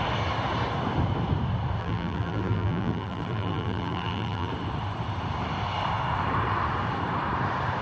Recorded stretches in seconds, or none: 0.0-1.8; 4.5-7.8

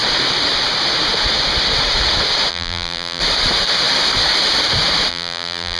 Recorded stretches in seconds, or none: 0.0-2.5; 3.2-5.1

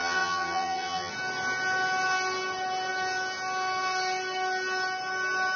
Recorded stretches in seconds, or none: 1.1-5.6

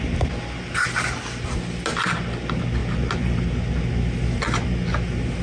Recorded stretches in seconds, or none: 0.0-5.4

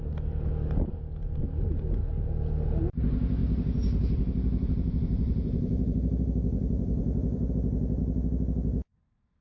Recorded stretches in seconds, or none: 0.0-3.4; 7.5-9.4

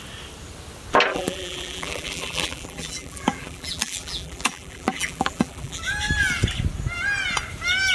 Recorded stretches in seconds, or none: 0.0-1.1; 5.8-7.9

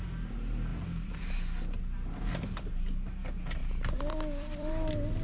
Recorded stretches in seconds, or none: 0.0-0.7; 1.3-3.6; 4.7-5.2